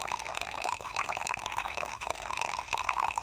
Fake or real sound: fake